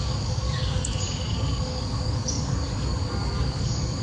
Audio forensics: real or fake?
fake